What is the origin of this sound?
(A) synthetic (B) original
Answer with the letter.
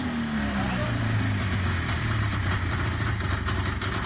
B